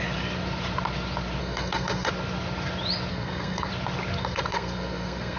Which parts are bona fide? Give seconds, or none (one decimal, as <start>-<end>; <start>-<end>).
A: 0.0-1.4; 2.1-3.1; 3.7-4.2